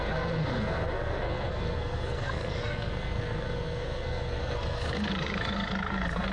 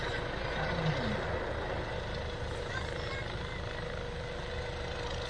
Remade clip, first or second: first